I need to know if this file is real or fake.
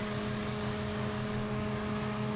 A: fake